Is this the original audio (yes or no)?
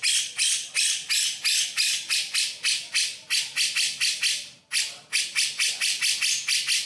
yes